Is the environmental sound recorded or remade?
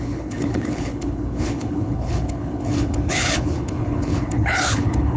remade